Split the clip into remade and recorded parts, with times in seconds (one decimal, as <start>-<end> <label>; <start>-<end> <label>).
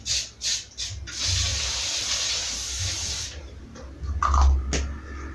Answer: 0.0-1.5 recorded; 1.5-3.6 remade; 3.6-5.3 recorded